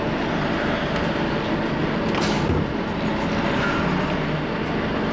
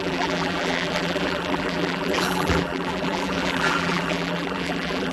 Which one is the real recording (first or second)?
first